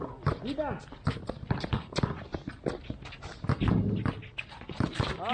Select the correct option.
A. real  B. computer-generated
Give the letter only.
A